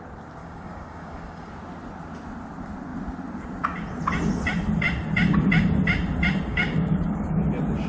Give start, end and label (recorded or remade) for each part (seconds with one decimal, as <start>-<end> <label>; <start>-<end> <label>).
0.0-0.4 recorded; 0.4-1.5 remade; 1.5-6.5 recorded; 6.5-7.4 remade; 7.4-7.9 recorded